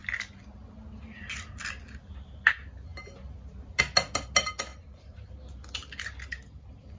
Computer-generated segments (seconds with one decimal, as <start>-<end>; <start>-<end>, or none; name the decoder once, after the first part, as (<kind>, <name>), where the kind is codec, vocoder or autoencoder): 4.7-5.3 (vocoder, BigVGAN v2)